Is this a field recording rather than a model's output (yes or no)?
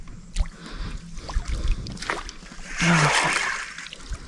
yes